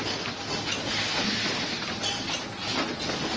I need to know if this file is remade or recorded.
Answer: recorded